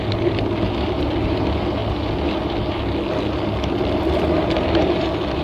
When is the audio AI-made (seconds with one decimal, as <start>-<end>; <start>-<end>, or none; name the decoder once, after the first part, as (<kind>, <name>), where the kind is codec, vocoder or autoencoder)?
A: none